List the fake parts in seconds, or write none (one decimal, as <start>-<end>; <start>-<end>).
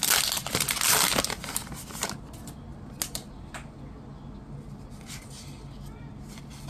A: none